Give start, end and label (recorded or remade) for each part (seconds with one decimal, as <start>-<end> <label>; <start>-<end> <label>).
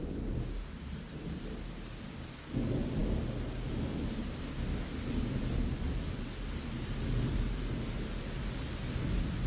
0.0-3.0 recorded; 3.0-6.2 remade; 6.2-9.5 recorded